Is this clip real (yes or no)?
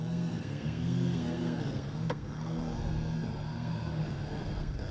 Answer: no